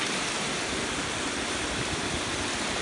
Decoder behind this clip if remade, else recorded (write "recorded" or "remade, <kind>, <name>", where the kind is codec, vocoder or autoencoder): recorded